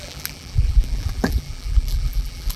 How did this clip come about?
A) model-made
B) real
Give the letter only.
A